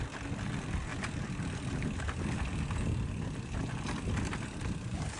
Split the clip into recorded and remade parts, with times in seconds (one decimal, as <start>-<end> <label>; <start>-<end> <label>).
0.0-5.2 recorded